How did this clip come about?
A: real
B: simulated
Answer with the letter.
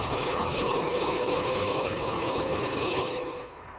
B